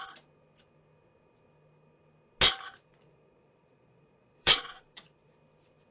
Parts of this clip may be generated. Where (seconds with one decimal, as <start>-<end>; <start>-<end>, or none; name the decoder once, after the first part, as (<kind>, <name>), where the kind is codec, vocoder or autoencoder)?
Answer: 2.9-5.3 (vocoder, Vocos)